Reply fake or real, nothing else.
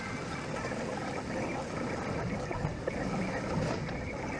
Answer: real